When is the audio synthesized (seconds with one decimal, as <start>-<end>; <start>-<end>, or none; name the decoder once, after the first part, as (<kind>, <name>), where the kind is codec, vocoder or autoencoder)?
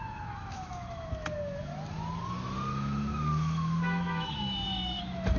0.0-1.7 (autoencoder, DAC-VAE); 2.7-5.4